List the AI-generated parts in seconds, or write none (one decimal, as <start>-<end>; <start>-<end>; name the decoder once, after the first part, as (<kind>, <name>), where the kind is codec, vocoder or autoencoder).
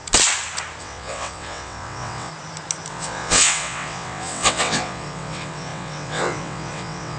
0.8-2.3 (vocoder, WaveNeXt); 2.9-7.2